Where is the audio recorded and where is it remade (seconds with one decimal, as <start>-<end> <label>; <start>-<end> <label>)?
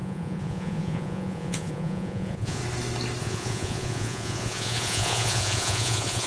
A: 0.0-2.6 remade; 2.6-3.2 recorded; 3.2-6.3 remade